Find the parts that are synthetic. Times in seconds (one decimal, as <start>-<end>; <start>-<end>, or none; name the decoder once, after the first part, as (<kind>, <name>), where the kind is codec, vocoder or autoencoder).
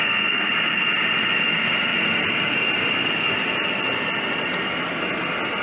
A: 0.0-0.5 (codec, SNAC)